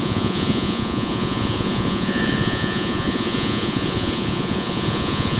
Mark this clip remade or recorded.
remade